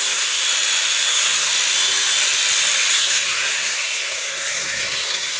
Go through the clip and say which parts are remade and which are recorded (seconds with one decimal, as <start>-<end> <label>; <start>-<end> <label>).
0.0-0.4 remade; 0.4-1.0 recorded; 1.0-1.5 remade; 1.5-2.9 recorded; 2.9-5.4 remade

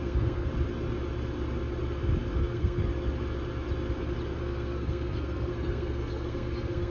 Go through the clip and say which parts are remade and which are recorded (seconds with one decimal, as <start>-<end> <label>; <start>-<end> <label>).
0.0-0.5 remade; 0.5-2.4 recorded; 2.4-2.9 remade; 2.9-4.4 recorded; 4.4-6.9 remade

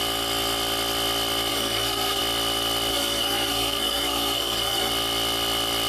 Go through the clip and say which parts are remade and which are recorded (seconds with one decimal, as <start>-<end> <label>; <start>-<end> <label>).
0.0-1.5 recorded; 1.5-2.2 remade; 2.2-2.9 recorded; 2.9-4.9 remade; 4.9-5.9 recorded

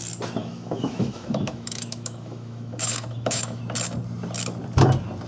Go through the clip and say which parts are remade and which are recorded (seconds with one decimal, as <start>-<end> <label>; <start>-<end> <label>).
0.0-0.4 recorded; 0.4-3.6 remade; 3.6-5.3 recorded

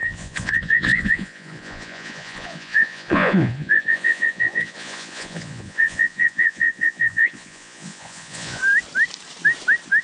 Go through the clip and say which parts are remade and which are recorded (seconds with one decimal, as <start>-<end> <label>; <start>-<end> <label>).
0.0-8.6 remade; 8.6-10.0 recorded